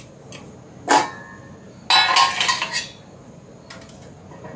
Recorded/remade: recorded